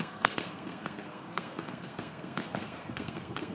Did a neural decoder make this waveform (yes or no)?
yes